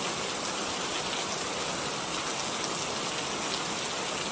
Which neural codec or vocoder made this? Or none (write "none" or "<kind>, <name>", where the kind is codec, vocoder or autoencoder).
none